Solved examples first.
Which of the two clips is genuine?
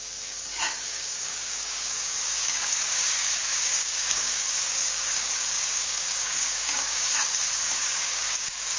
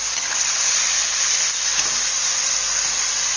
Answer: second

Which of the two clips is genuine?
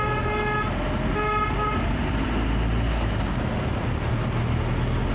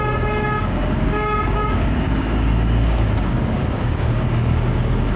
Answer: first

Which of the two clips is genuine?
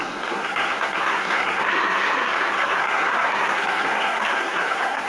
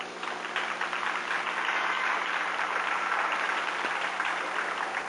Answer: second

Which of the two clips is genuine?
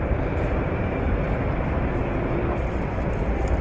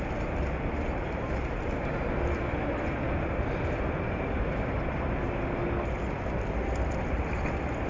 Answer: second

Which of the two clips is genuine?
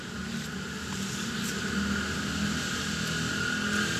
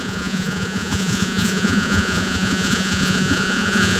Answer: first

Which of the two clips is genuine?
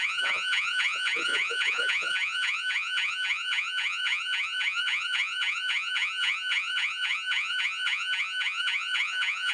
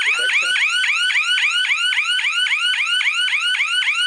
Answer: second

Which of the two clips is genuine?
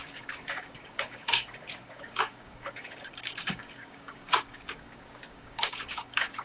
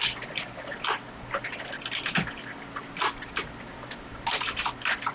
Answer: second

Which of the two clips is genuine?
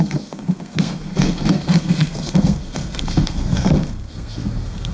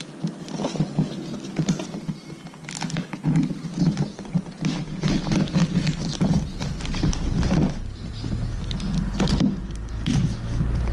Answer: second